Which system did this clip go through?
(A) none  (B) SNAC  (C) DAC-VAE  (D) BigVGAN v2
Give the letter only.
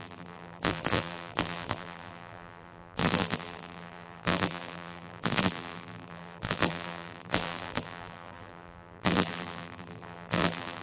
D